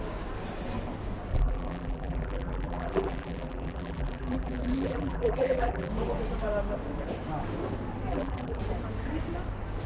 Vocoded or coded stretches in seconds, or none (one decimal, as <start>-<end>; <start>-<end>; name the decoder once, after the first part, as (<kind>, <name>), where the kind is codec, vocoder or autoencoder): 1.3-5.9 (vocoder, BigVGAN v2); 8.1-8.6